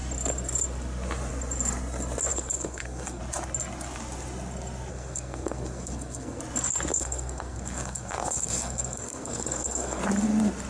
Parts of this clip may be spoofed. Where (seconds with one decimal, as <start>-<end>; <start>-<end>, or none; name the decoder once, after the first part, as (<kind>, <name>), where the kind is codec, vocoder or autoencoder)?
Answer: 2.3-3.2 (codec, SNAC); 4.9-6.4; 6.9-10.0